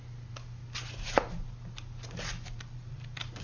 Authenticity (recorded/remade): recorded